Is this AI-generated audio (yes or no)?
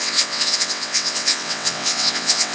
yes